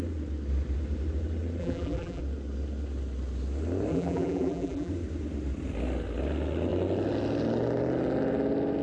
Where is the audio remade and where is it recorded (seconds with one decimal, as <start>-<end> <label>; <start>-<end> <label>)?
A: 0.0-1.6 recorded; 1.6-2.2 remade; 2.2-3.9 recorded; 3.9-4.9 remade; 4.9-8.8 recorded